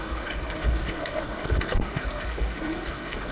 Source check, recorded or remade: remade